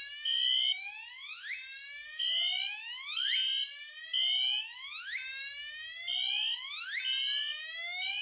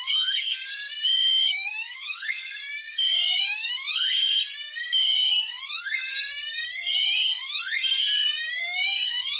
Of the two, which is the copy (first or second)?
second